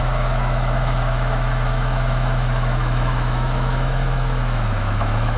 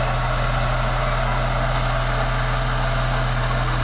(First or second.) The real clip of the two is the second